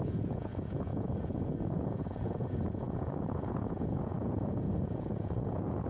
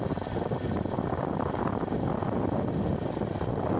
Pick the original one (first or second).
second